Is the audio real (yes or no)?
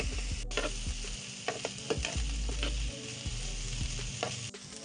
yes